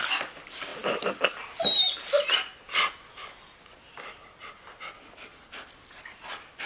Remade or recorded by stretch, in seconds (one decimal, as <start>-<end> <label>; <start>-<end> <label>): 0.0-6.7 recorded